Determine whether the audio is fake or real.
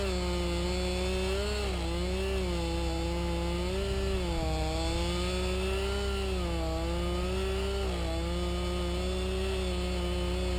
real